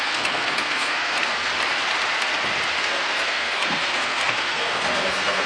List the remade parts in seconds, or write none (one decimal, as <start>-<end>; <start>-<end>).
0.0-1.5; 2.8-5.5